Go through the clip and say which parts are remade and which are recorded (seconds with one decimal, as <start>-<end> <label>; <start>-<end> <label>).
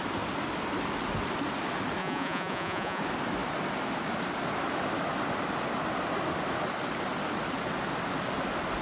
0.0-2.0 recorded; 2.0-3.0 remade; 3.0-8.8 recorded